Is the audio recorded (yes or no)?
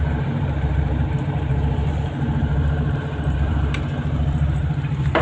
no